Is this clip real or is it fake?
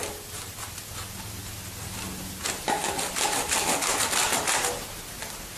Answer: real